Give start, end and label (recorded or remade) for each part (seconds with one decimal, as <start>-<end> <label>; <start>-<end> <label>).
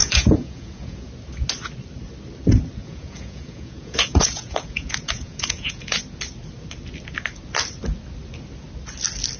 0.0-1.1 remade; 1.1-2.8 recorded; 2.8-6.0 remade; 6.0-9.4 recorded